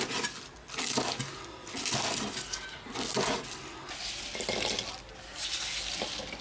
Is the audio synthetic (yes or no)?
no